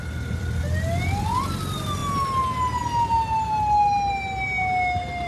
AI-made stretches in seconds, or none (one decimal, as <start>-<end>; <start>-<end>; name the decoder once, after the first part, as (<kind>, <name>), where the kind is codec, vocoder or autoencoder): none